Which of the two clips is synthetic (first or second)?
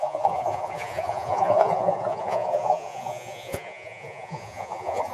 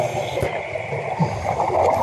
first